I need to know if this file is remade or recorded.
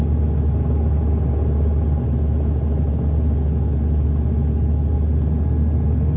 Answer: recorded